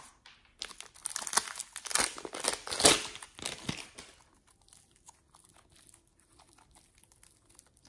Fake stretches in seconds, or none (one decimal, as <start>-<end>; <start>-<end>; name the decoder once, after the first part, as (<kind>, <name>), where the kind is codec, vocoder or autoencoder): none